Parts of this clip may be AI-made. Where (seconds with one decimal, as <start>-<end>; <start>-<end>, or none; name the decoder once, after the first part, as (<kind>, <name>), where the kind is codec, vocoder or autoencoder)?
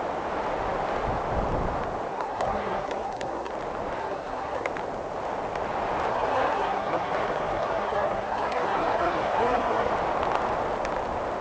2.1-3.5 (codec, SNAC); 4.0-4.7; 6.1-9.9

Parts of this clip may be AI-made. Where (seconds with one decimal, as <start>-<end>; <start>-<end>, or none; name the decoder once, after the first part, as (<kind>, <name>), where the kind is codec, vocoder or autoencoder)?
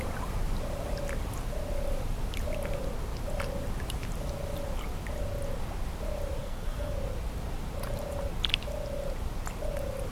6.4-6.9 (codec, SNAC)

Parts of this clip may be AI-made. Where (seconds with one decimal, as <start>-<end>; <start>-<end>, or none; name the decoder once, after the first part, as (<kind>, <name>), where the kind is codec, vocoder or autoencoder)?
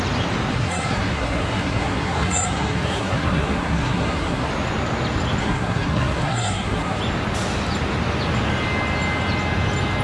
0.5-4.5 (codec, SNAC); 5.4-7.0